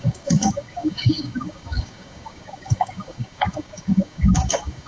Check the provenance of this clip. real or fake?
fake